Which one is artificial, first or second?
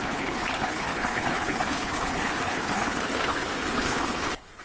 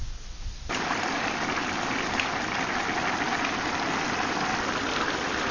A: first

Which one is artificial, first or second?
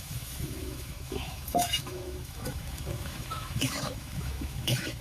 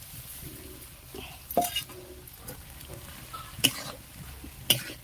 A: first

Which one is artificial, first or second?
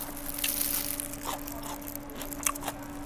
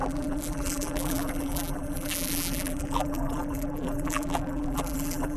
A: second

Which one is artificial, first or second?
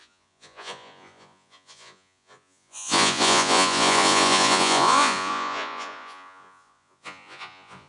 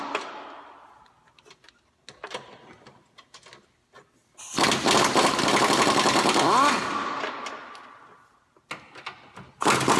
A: first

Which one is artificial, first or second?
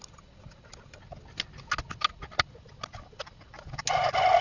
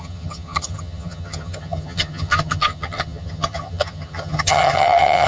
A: second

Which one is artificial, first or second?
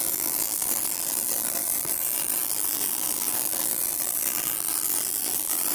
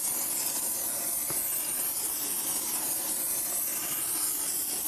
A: first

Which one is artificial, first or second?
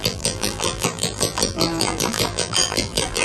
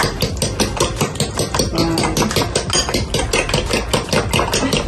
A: first